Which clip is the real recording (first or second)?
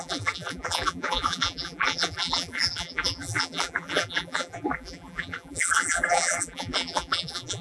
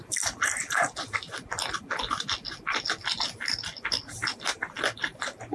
second